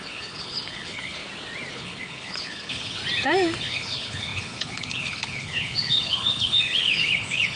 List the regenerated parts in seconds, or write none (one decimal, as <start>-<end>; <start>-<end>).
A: 0.0-1.2; 1.7-3.0; 3.6-7.6